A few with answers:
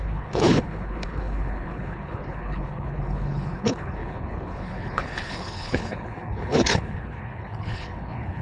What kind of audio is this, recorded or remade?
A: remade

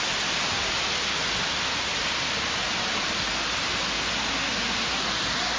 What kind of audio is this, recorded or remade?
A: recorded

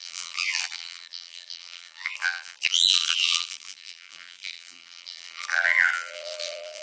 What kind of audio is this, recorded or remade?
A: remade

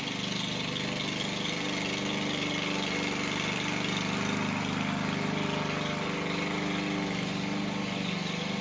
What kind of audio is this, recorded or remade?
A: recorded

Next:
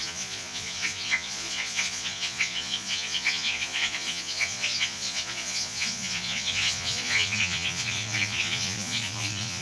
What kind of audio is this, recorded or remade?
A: remade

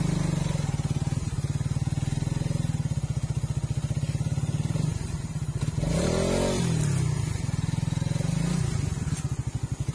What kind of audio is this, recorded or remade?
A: recorded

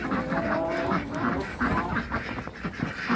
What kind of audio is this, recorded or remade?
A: recorded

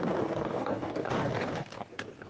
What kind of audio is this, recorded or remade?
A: remade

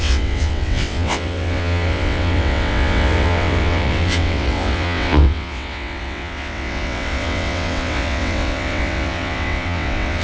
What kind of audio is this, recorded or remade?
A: remade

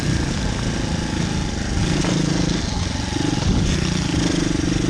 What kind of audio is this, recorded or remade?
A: recorded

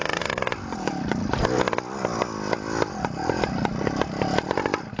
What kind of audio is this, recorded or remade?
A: recorded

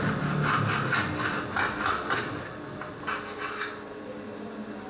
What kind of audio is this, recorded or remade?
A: recorded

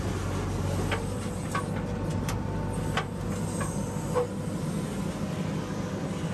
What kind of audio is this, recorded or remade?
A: recorded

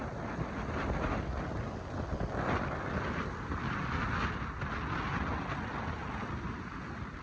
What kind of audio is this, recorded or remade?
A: recorded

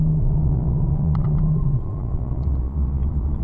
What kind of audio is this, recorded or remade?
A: remade